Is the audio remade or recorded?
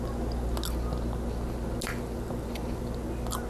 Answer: recorded